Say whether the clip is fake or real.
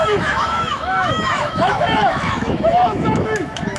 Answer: fake